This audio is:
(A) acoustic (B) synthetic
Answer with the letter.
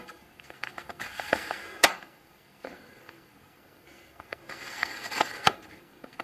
B